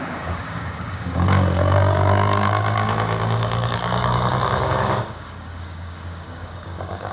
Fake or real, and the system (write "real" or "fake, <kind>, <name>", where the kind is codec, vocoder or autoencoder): fake, codec, DAC